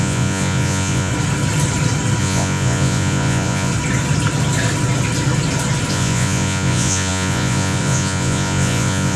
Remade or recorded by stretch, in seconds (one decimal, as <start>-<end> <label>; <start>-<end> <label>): 0.0-1.1 remade; 1.1-2.2 recorded; 2.2-3.7 remade; 3.7-5.9 recorded; 5.9-9.2 remade